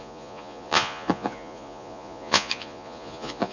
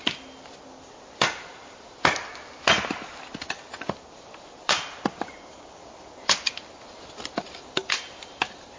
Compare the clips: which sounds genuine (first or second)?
second